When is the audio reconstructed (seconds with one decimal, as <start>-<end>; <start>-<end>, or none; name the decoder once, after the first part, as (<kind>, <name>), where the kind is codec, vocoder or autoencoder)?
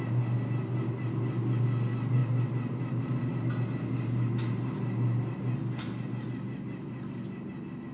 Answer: none